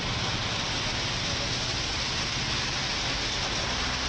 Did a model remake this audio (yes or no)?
no